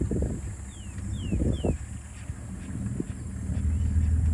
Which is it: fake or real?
real